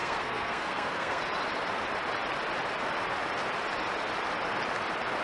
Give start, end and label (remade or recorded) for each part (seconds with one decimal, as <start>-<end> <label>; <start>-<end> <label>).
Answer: 0.0-1.2 remade; 1.2-5.2 recorded